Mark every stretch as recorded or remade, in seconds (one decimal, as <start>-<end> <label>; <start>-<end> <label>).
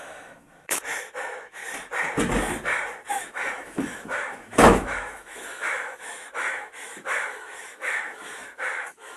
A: 0.0-1.6 remade; 1.6-3.1 recorded; 3.1-9.2 remade